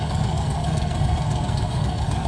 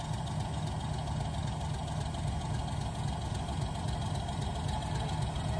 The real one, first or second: second